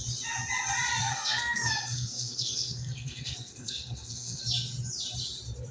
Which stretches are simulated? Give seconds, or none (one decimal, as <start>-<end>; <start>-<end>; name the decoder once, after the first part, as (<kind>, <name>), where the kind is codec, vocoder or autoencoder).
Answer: 1.0-4.4 (codec, SNAC)

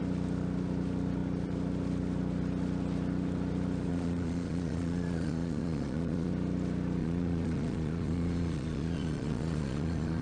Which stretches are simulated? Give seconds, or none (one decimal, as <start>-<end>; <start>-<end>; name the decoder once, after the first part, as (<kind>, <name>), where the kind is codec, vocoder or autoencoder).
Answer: 3.9-6.3 (vocoder, Vocos); 7.0-10.2

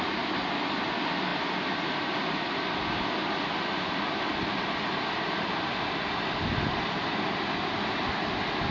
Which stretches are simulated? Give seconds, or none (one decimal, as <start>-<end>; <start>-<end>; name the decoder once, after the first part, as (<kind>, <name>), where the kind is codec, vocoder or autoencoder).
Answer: none

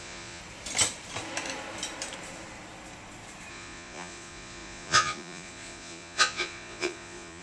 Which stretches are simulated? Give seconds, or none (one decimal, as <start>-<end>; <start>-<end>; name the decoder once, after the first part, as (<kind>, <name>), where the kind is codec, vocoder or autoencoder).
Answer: 0.0-0.4 (vocoder, Vocos); 3.5-7.4

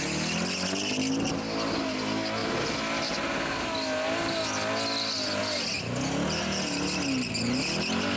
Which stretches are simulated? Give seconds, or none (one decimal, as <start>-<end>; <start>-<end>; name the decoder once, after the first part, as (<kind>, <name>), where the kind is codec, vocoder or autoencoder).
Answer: none

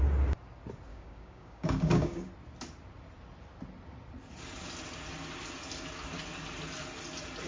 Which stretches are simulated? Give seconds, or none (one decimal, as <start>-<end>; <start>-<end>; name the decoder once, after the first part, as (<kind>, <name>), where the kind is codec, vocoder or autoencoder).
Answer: 0.9-2.3 (codec, DAC)

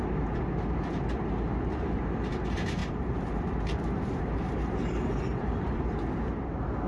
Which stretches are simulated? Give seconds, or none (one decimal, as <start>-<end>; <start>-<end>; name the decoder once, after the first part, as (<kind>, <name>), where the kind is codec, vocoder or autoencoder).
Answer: 2.8-5.8 (vocoder, BigVGAN v2)